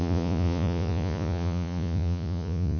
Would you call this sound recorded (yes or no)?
no